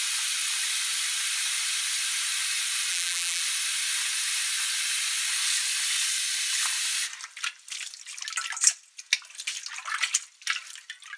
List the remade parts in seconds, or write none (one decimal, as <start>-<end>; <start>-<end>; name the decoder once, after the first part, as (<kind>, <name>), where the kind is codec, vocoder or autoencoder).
2.9-3.4 (vocoder, BigVGAN v2)